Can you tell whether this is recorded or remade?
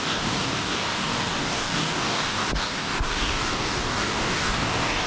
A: remade